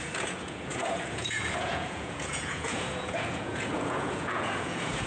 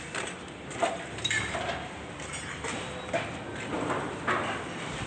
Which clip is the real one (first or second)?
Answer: second